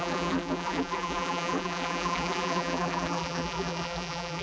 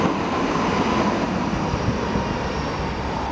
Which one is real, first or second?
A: second